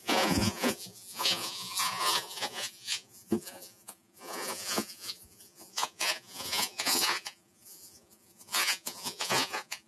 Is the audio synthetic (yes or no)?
yes